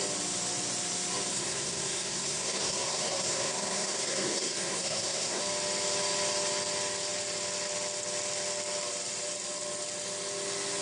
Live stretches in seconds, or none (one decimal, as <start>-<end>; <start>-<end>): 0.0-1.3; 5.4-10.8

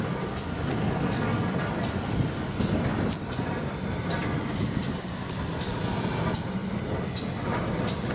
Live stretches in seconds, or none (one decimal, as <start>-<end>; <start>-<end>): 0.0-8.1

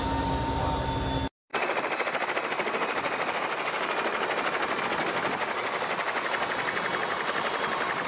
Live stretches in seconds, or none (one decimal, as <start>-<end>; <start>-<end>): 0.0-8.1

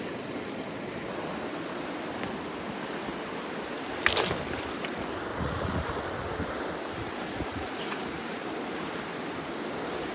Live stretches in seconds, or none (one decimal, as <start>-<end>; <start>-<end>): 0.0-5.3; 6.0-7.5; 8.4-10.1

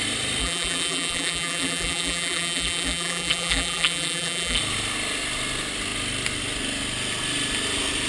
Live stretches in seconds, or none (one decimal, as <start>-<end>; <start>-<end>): 0.0-0.4; 4.6-8.1

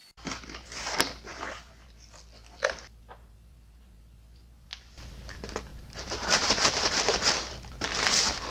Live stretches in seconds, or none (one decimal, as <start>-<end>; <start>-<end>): 0.0-5.7; 6.9-8.5